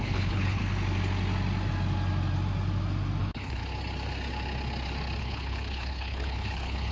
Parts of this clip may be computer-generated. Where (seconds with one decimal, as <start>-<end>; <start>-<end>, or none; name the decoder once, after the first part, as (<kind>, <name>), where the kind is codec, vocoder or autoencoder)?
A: 0.0-0.6 (codec, HILCodec); 3.2-3.6; 5.2-6.9